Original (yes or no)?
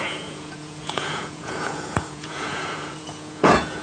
no